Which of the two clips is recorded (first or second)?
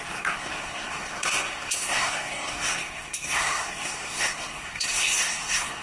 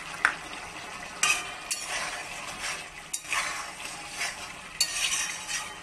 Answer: second